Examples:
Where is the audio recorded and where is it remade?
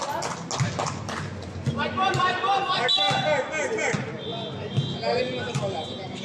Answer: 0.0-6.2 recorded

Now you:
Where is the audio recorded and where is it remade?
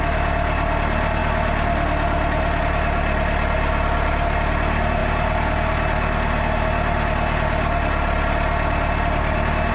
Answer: 0.0-9.7 recorded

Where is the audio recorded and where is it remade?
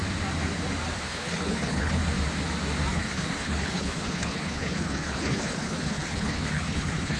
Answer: 0.0-1.0 recorded; 1.0-2.0 remade; 2.0-2.9 recorded; 2.9-7.2 remade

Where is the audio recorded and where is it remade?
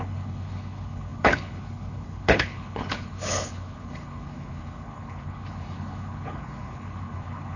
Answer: 0.0-7.6 remade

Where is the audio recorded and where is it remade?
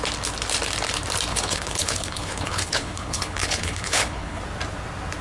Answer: 0.0-1.3 recorded; 1.3-4.4 remade; 4.4-5.2 recorded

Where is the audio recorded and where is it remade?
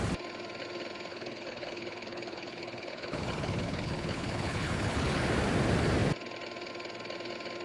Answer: 0.0-1.1 recorded; 1.1-5.3 remade; 5.3-7.6 recorded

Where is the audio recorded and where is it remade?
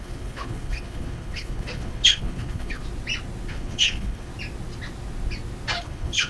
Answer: 0.0-2.8 remade; 2.8-3.5 recorded; 3.5-4.3 remade; 4.3-5.8 recorded; 5.8-6.3 remade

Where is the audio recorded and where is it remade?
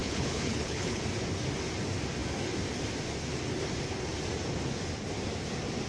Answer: 0.0-1.0 remade; 1.0-5.9 recorded